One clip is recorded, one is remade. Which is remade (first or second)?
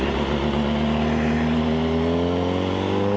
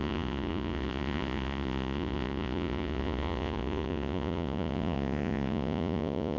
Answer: second